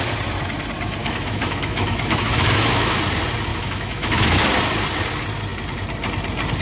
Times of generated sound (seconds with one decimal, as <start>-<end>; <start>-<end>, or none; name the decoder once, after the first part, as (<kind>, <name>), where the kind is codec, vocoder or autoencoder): 1.0-3.0 (autoencoder, DAC-VAE); 3.5-4.4